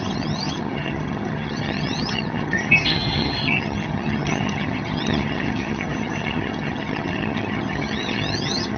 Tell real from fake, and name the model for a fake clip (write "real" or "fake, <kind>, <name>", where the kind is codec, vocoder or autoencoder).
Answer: fake, vocoder, HiFi-GAN